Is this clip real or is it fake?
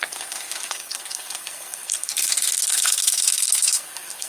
fake